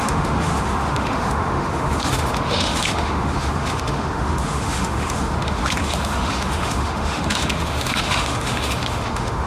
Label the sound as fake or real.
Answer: fake